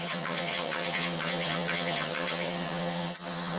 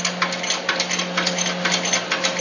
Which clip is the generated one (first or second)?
first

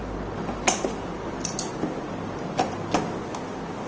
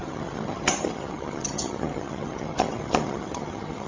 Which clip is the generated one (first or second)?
second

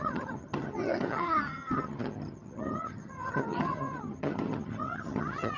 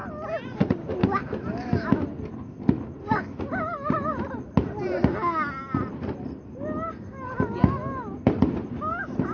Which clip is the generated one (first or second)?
first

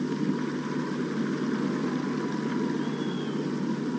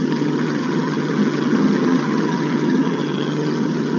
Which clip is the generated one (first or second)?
second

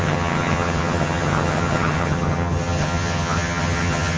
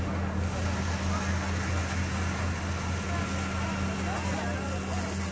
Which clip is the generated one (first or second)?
first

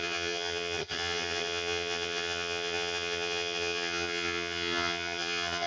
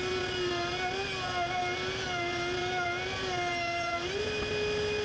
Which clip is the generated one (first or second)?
first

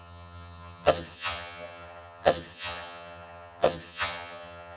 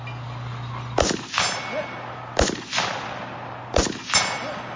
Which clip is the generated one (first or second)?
first